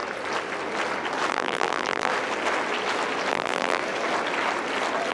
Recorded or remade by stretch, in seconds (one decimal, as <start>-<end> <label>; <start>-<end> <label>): 0.0-1.3 recorded; 1.3-2.1 remade; 2.1-3.3 recorded; 3.3-3.8 remade; 3.8-5.1 recorded